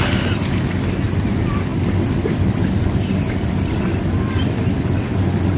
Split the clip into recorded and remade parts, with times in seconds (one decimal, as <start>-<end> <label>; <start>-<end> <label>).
0.0-5.6 recorded